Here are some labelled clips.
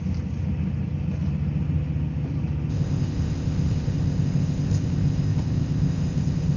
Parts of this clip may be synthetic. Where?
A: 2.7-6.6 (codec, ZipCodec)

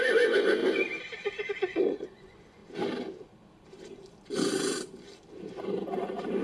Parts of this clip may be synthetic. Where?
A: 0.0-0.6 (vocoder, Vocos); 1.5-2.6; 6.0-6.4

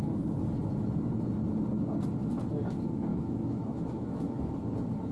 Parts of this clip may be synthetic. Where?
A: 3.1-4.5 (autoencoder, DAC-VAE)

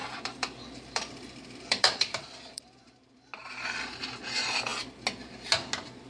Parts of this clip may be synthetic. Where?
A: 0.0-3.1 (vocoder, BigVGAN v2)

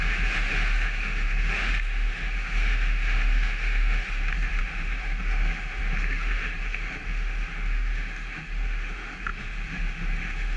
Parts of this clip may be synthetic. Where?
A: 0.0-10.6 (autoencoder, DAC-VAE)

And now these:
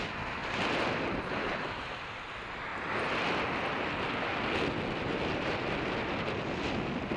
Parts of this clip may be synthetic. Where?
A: none

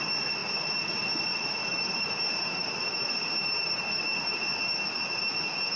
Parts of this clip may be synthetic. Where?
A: 1.6-4.4 (vocoder, BigVGAN v2)

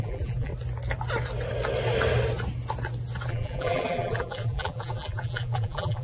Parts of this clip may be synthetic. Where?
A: 0.0-0.5 (vocoder, BigVGAN v2); 3.3-6.0